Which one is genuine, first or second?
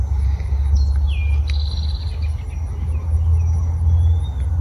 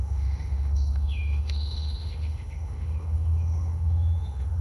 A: first